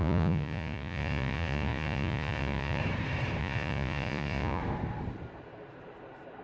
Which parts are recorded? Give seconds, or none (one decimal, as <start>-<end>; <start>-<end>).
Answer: 2.8-3.4; 4.6-6.4